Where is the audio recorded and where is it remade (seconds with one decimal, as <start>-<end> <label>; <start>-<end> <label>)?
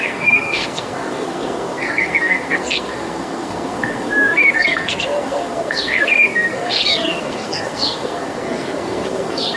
0.0-9.6 remade